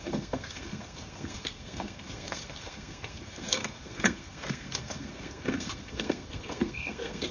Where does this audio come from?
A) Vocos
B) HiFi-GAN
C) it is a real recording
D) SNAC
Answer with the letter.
D